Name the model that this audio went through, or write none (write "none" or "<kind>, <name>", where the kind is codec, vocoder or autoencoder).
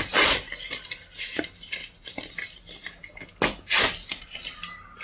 none